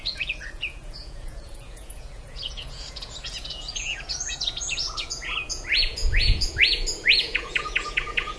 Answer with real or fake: fake